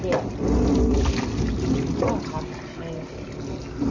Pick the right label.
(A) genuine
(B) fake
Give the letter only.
A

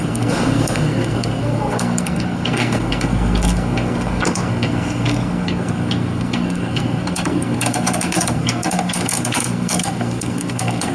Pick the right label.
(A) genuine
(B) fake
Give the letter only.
B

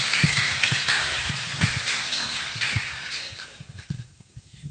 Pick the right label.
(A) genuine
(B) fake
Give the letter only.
B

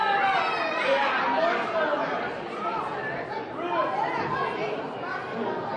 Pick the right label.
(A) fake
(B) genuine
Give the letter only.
B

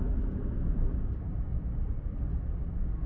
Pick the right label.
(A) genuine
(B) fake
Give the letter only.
A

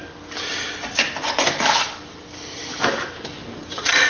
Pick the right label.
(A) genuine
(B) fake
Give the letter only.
A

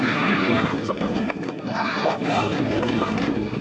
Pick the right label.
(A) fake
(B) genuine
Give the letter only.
A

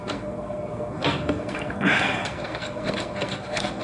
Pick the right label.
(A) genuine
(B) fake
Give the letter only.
B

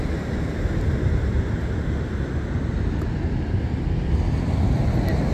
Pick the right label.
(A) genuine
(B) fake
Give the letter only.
A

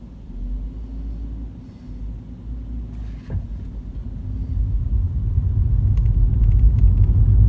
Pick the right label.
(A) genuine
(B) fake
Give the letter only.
A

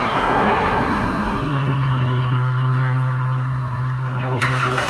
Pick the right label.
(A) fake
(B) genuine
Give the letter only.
A